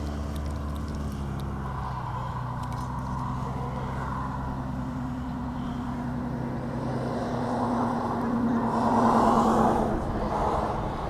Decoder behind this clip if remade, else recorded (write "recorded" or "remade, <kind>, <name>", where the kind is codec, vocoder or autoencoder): recorded